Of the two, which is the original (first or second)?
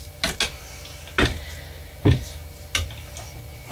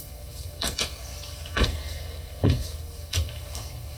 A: first